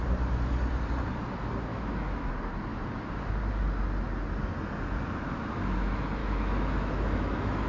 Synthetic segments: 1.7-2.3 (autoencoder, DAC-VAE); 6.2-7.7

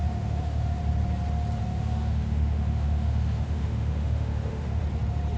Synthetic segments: 0.0-0.8 (autoencoder, DAC-VAE); 1.6-4.8

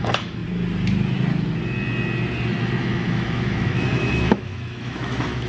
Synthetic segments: 0.0-0.4 (autoencoder, DAC-VAE); 2.8-5.5

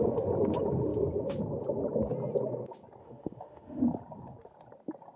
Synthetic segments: 3.0-3.8 (autoencoder, DAC-VAE)

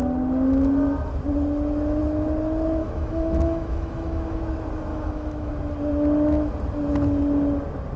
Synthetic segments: 2.8-4.4 (autoencoder, DAC-VAE); 4.9-5.5

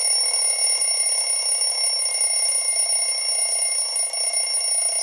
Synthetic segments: none

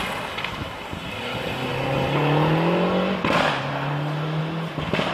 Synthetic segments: none

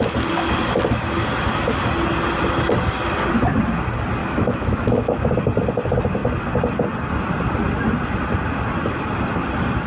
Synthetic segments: 4.2-5.3 (autoencoder, DAC-VAE)